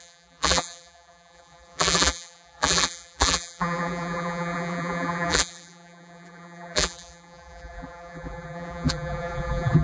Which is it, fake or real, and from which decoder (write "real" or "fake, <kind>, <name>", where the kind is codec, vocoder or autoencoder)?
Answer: fake, vocoder, BigVGAN v2